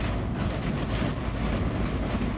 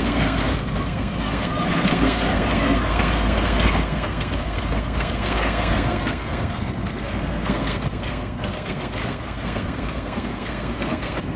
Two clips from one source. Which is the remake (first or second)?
second